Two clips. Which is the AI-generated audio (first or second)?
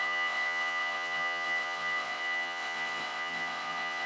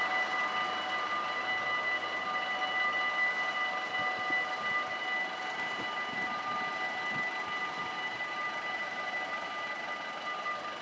first